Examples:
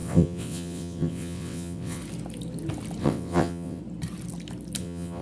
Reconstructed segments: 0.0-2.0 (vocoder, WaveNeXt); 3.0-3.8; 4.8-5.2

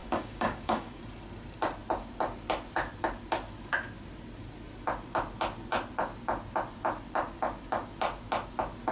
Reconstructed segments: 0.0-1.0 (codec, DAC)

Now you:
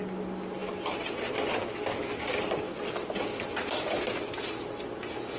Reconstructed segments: none

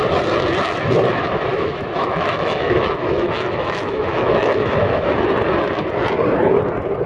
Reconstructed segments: 1.5-5.1 (autoencoder, DAC-VAE)